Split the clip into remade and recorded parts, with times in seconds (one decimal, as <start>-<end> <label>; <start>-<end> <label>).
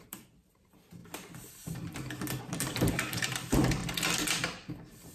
0.0-1.0 remade; 1.0-2.4 recorded; 2.4-3.8 remade; 3.8-5.1 recorded